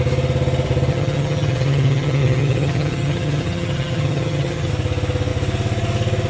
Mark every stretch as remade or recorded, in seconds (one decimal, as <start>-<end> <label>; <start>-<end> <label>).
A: 0.0-0.9 recorded; 0.9-4.7 remade; 4.7-6.3 recorded